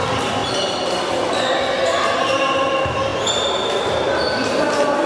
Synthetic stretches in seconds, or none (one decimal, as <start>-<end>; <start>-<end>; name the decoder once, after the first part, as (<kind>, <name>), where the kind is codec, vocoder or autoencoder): none